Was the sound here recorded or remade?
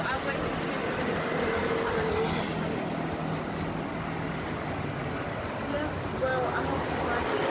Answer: recorded